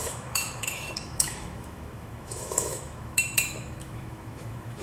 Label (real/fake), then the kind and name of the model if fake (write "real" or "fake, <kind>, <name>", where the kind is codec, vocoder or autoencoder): fake, autoencoder, DAC-VAE